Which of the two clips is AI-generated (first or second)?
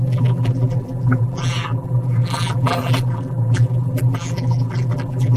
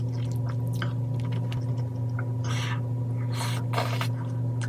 first